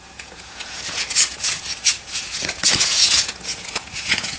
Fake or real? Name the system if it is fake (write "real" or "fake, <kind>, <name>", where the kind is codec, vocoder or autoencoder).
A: fake, vocoder, Vocos